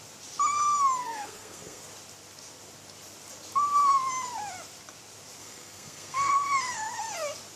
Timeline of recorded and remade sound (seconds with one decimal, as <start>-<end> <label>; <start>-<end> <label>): 0.0-1.0 recorded; 1.0-1.8 remade; 1.8-5.4 recorded; 5.4-6.3 remade; 6.3-7.6 recorded